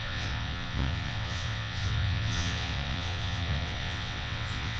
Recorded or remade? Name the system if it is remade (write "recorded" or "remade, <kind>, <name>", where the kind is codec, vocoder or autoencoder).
remade, vocoder, WaveNeXt